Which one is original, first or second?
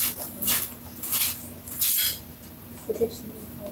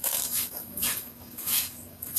first